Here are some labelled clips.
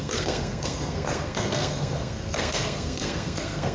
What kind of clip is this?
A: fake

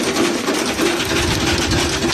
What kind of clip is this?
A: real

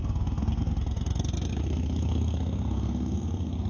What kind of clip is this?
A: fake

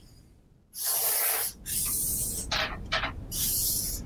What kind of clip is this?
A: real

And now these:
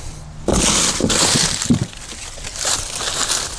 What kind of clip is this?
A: real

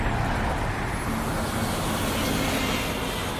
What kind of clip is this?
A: real